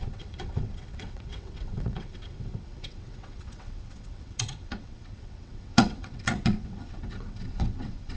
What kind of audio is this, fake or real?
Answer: fake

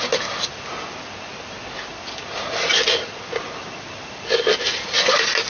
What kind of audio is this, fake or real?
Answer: real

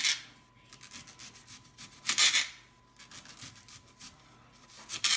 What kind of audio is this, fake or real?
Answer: real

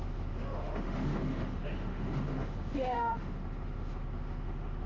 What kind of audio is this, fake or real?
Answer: fake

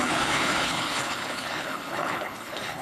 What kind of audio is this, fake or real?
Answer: fake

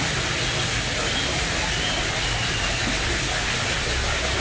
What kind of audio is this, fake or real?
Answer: real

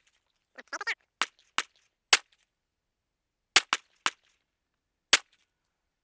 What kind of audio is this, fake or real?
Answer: real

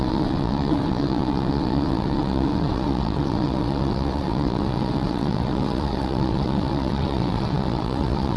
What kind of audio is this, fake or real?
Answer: fake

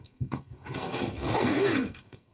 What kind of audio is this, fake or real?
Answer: fake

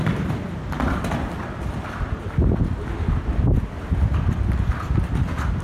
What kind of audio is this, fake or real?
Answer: real